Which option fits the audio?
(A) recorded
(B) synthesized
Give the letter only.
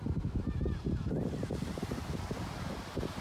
A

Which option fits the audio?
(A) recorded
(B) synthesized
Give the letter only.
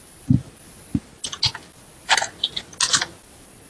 A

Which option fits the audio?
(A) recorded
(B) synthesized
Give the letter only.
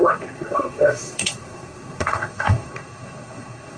B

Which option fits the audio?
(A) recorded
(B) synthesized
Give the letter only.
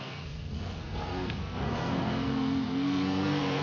B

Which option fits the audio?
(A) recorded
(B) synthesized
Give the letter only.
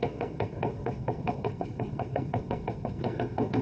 B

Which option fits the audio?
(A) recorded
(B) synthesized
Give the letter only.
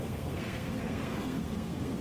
B